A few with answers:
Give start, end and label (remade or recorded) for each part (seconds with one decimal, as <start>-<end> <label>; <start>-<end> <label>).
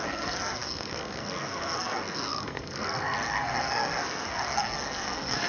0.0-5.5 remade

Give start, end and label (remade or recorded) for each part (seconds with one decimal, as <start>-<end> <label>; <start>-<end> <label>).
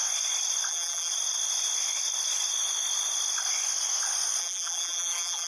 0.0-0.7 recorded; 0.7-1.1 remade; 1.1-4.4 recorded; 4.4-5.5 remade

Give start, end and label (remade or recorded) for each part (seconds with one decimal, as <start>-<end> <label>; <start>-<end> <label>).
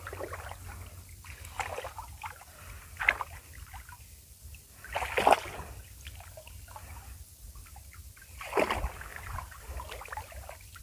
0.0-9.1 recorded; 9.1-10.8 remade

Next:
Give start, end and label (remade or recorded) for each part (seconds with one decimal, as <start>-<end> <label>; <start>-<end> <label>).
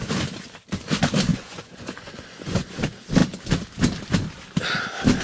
0.0-1.3 recorded; 1.3-2.8 remade; 2.8-5.2 recorded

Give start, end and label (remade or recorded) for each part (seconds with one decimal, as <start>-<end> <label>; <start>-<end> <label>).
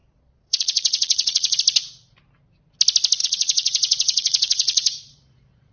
0.0-1.6 remade; 1.6-3.2 recorded; 3.2-5.7 remade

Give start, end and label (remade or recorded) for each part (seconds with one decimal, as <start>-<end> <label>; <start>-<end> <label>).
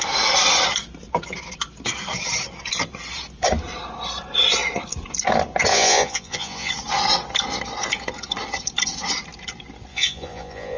0.0-5.7 recorded; 5.7-6.7 remade; 6.7-9.9 recorded; 9.9-10.8 remade